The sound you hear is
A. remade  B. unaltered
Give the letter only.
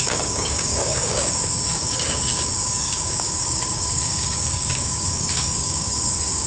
A